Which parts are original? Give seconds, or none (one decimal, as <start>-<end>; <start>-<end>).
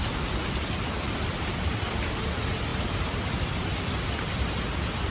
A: 0.0-5.1